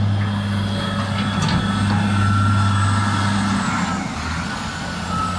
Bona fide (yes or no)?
yes